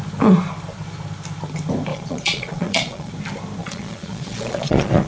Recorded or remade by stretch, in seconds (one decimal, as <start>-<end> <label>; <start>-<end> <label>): 0.0-1.9 recorded; 1.9-3.1 remade; 3.1-3.6 recorded; 3.6-5.1 remade